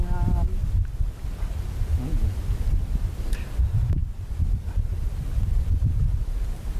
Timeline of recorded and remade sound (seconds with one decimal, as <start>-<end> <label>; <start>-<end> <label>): 0.0-4.9 recorded; 4.9-6.8 remade